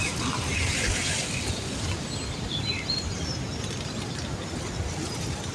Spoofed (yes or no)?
no